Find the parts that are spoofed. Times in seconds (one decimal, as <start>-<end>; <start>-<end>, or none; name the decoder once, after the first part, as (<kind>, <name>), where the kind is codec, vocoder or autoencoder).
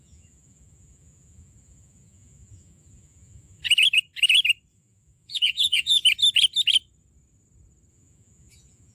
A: 0.0-3.6 (vocoder, Vocos); 4.7-6.0; 7.9-8.9